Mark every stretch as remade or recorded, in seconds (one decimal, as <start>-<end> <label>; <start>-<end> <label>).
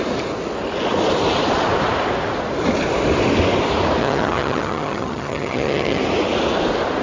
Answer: 0.0-4.0 recorded; 4.0-6.0 remade; 6.0-7.0 recorded